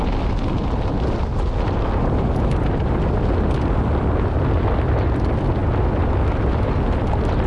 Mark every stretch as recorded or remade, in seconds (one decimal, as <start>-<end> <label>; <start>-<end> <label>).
0.0-7.5 recorded

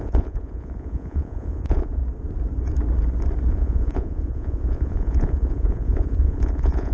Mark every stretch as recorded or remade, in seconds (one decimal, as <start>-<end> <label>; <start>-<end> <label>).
0.0-2.0 remade; 2.0-3.5 recorded; 3.5-6.9 remade